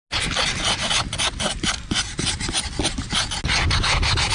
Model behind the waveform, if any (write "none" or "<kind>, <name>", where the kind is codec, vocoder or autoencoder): none